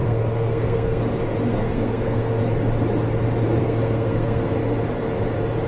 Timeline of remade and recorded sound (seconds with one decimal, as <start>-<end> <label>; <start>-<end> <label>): 0.0-1.0 remade; 1.0-1.5 recorded; 1.5-2.3 remade; 2.3-3.6 recorded; 3.6-4.5 remade; 4.5-5.7 recorded